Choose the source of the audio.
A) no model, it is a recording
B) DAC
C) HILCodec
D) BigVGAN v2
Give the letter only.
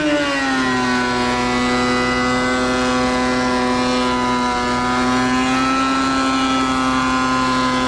A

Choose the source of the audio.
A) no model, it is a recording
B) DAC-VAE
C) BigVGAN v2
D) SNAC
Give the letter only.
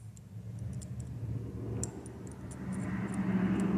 A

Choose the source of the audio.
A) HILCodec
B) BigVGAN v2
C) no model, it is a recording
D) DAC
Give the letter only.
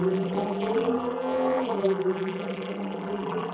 B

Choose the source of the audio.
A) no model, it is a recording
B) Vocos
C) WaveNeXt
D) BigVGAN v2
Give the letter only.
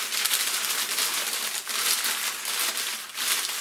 A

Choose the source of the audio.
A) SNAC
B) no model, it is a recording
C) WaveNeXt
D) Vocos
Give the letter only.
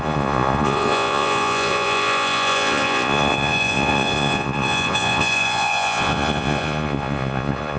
D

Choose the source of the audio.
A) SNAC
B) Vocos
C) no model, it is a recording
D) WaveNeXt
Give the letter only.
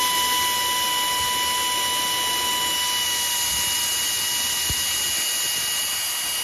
C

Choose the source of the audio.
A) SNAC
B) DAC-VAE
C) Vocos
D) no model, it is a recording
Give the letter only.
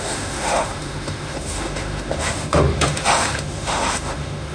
B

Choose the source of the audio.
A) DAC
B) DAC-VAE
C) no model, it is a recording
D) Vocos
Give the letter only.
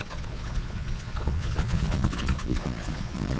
D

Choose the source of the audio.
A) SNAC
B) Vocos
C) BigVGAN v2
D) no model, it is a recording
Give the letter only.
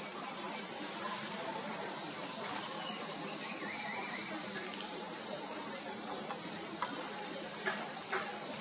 C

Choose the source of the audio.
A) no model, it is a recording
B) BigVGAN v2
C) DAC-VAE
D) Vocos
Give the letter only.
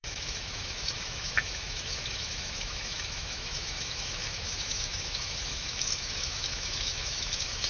C